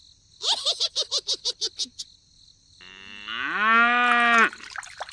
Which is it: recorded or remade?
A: recorded